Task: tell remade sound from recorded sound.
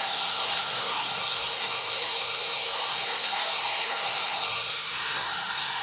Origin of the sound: remade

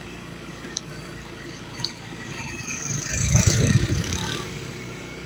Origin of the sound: remade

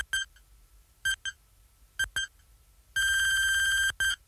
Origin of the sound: recorded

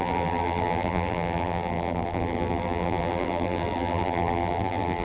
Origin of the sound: remade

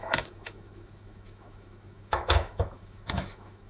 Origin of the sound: remade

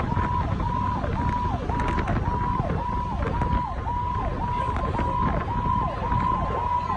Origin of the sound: recorded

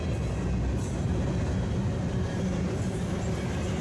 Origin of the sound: recorded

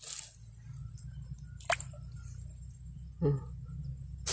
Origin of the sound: recorded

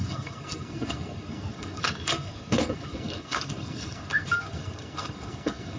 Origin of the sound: remade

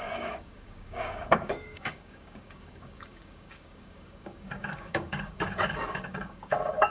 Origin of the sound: remade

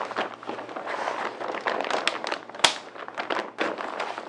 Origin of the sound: recorded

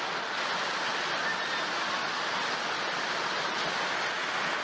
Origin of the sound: recorded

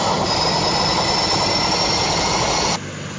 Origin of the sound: recorded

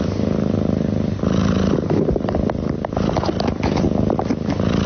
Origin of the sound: recorded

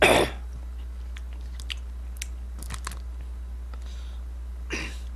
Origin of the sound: recorded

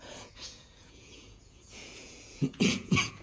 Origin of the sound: remade